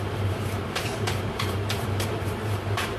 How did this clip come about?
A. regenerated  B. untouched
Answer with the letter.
A